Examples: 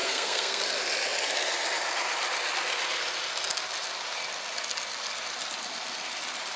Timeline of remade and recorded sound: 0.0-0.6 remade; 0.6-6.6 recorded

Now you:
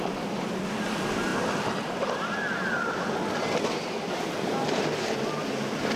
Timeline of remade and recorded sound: 0.0-6.0 recorded

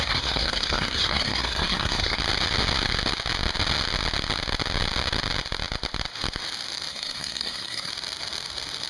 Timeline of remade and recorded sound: 0.0-2.2 remade; 2.2-6.9 recorded; 6.9-7.9 remade; 7.9-8.9 recorded

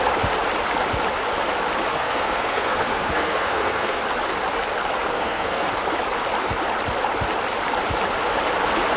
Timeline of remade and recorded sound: 0.0-1.9 recorded; 1.9-4.0 remade; 4.0-5.1 recorded; 5.1-5.7 remade; 5.7-9.0 recorded

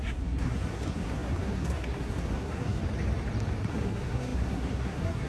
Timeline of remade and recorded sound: 0.0-2.8 remade; 2.8-3.7 recorded; 3.7-5.3 remade

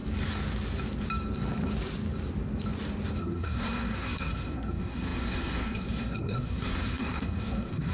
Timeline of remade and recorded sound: 0.0-3.2 recorded; 3.2-7.9 remade

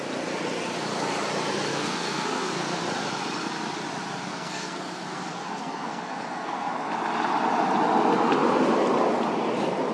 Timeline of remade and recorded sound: 0.0-1.7 recorded; 1.7-2.8 remade; 2.8-4.3 recorded; 4.3-6.9 remade; 6.9-9.9 recorded

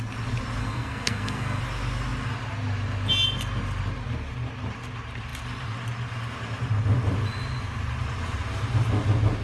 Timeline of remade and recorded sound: 0.0-0.6 recorded; 0.6-1.6 remade; 1.6-9.4 recorded